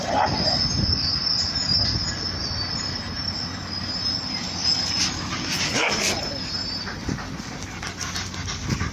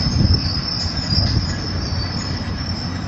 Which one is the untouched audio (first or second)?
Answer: first